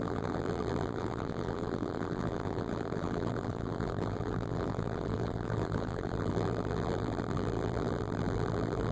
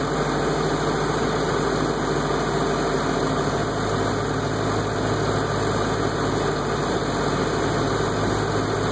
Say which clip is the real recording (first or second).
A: second